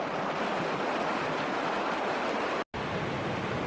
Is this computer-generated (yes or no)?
no